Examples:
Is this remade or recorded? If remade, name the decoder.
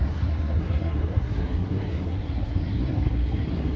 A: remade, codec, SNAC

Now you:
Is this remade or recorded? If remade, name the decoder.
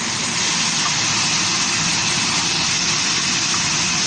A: recorded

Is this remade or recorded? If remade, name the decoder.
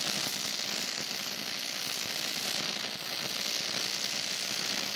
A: recorded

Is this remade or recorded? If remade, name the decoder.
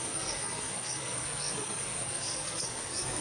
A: remade, codec, SNAC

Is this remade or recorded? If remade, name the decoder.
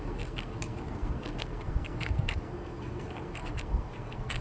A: remade, codec, SNAC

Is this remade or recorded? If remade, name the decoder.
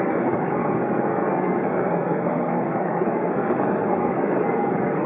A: remade, codec, SNAC